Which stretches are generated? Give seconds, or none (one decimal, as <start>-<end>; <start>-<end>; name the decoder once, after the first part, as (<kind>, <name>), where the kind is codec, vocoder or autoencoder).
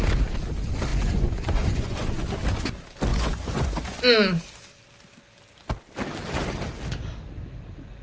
0.9-2.3 (vocoder, Vocos); 3.1-4.0